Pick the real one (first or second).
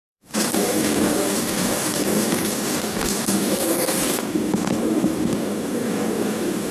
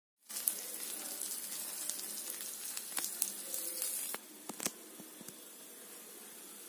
second